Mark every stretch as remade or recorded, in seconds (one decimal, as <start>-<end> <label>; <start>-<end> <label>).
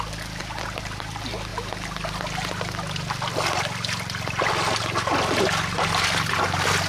0.0-0.4 recorded; 0.4-1.1 remade; 1.1-6.9 recorded